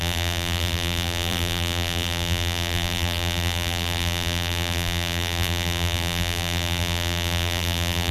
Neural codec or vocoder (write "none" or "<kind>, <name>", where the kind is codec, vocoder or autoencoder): vocoder, BigVGAN v2